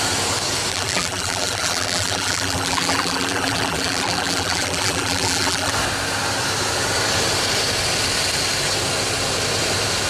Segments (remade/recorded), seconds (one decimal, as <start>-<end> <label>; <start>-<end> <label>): 0.0-0.7 recorded; 0.7-5.7 remade; 5.7-10.1 recorded